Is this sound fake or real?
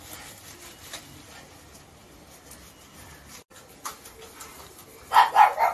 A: real